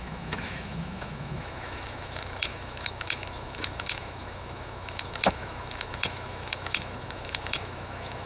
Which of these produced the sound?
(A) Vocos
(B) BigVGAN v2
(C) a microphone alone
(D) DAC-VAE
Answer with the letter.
D